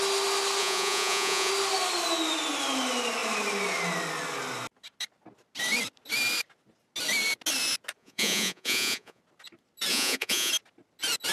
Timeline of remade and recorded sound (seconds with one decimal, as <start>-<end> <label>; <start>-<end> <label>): 0.0-0.6 recorded; 0.6-1.5 remade; 1.5-8.0 recorded; 8.0-9.2 remade; 9.2-9.9 recorded; 9.9-10.5 remade; 10.5-11.3 recorded

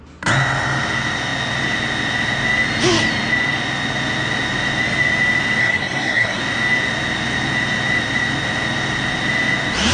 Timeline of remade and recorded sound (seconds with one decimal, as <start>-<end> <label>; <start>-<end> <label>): 0.0-5.6 recorded; 5.6-6.4 remade; 6.4-9.9 recorded

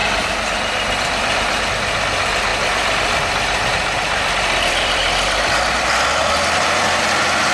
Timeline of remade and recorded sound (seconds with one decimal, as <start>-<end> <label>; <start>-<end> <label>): 0.0-1.6 remade; 1.6-2.5 recorded; 2.5-7.0 remade; 7.0-7.5 recorded

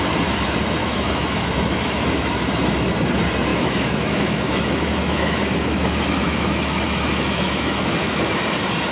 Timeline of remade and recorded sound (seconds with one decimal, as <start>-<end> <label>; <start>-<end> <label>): 0.0-0.8 recorded; 0.8-2.3 remade; 2.3-3.5 recorded; 3.5-8.2 remade; 8.2-8.9 recorded

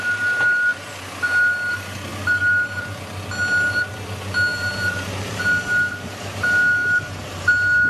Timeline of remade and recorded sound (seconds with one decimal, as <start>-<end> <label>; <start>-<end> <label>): 0.0-4.5 recorded; 4.5-5.4 remade; 5.4-7.9 recorded

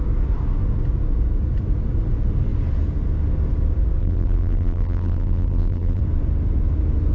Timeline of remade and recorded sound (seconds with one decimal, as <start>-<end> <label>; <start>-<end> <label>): 0.0-4.0 recorded; 4.0-6.0 remade; 6.0-7.1 recorded